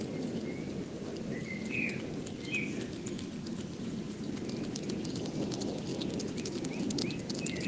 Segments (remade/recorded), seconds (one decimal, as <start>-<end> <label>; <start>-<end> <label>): 0.0-7.7 recorded

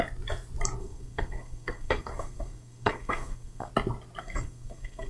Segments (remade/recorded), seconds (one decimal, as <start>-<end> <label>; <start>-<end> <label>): 0.0-0.8 recorded; 0.8-3.7 remade; 3.7-4.2 recorded; 4.2-5.1 remade

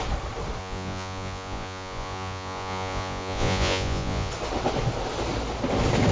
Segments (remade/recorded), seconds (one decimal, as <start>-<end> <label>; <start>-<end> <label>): 0.0-0.6 recorded; 0.6-4.3 remade; 4.3-6.1 recorded

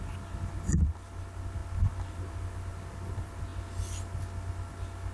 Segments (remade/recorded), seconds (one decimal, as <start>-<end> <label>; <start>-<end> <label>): 0.0-5.1 recorded

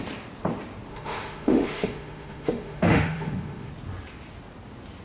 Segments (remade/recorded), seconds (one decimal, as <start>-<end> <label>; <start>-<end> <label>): 0.0-0.9 recorded; 0.9-3.7 remade; 3.7-5.0 recorded

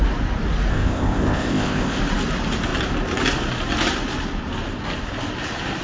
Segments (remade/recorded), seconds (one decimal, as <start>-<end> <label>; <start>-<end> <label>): 0.0-0.7 recorded; 0.7-2.0 remade; 2.0-5.8 recorded

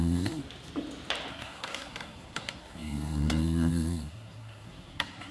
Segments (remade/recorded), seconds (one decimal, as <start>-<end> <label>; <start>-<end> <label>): 0.0-0.4 remade; 0.4-1.3 recorded; 1.3-5.3 remade